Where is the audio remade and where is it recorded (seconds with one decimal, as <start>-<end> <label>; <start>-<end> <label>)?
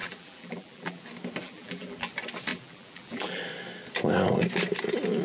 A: 0.0-1.0 remade; 1.0-1.4 recorded; 1.4-2.1 remade; 2.1-2.5 recorded; 2.5-3.4 remade; 3.4-5.2 recorded